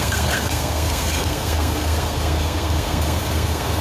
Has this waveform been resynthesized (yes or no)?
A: yes